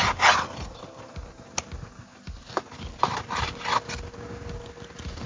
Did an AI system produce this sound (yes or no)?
no